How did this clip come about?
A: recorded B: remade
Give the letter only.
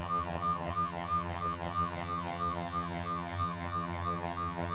B